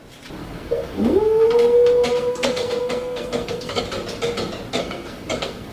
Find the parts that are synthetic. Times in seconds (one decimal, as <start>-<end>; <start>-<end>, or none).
0.4-3.8; 4.7-5.7